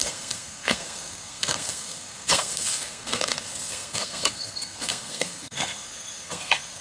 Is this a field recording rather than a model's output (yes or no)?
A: no